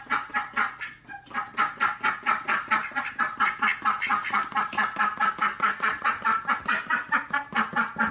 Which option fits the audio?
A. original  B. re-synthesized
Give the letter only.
A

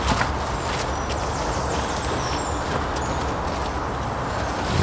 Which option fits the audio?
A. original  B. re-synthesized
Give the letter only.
A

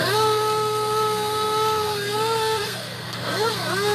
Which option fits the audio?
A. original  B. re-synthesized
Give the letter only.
B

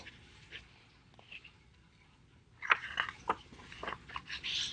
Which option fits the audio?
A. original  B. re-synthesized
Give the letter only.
A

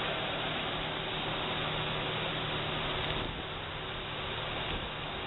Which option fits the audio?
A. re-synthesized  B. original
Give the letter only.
B